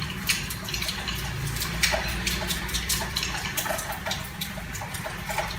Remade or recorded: remade